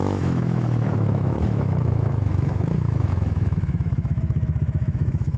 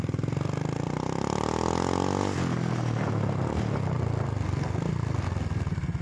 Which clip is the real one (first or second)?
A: second